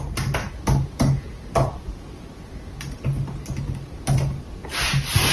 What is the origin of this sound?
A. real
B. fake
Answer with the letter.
A